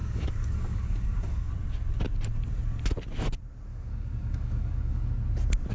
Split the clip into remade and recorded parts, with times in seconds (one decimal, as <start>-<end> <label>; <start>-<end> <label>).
0.0-1.5 remade; 1.5-3.7 recorded; 3.7-5.1 remade; 5.1-5.7 recorded